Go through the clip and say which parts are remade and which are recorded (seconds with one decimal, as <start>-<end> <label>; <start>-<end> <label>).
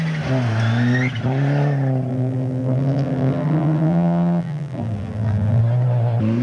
0.0-2.1 recorded; 2.1-5.6 remade; 5.6-6.4 recorded